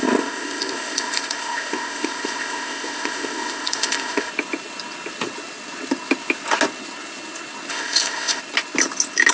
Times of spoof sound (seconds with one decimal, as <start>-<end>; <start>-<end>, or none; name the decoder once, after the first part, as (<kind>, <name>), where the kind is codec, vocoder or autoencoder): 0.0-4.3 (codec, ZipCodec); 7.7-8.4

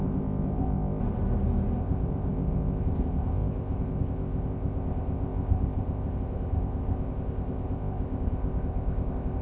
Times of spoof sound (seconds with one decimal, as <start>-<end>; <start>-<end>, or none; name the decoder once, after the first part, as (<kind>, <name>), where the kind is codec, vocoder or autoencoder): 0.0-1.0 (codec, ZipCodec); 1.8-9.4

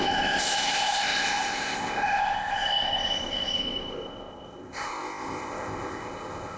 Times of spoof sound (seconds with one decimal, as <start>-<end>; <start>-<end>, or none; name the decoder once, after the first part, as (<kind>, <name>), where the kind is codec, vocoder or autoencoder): 0.0-6.6 (codec, ZipCodec)

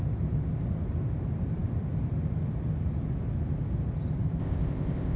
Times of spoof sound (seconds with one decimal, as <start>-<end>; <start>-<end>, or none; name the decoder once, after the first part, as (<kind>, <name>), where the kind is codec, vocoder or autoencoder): 4.4-5.2 (codec, ZipCodec)

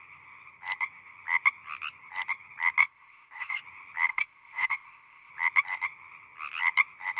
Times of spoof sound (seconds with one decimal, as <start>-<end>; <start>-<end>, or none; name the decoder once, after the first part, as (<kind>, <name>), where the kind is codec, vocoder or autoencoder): 2.8-3.6 (codec, ZipCodec); 4.1-5.3

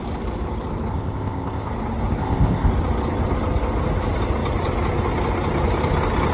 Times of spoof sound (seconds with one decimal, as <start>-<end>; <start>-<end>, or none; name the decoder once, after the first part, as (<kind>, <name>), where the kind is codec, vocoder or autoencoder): 0.9-1.7 (codec, ZipCodec); 2.2-2.7

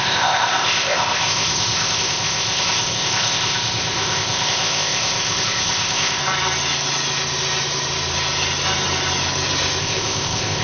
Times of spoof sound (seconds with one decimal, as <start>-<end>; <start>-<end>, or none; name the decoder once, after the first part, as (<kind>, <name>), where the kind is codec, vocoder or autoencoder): 0.0-6.2 (codec, ZipCodec); 9.8-10.6

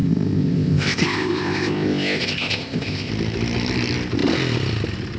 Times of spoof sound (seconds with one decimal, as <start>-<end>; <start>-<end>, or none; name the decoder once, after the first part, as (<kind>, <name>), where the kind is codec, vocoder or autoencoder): 0.0-3.1 (codec, ZipCodec)